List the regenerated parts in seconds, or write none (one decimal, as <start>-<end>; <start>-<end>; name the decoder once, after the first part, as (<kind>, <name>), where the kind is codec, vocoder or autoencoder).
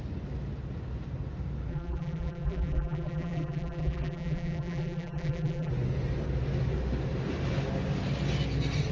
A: 1.7-5.7 (vocoder, BigVGAN v2)